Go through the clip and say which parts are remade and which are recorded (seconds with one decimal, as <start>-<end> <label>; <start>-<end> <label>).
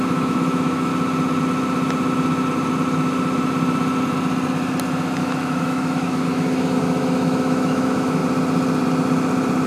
0.0-0.9 remade; 0.9-5.2 recorded; 5.2-8.2 remade; 8.2-9.7 recorded